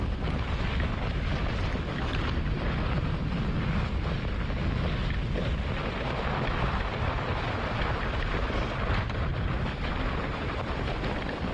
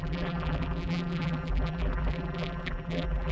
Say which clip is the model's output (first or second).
second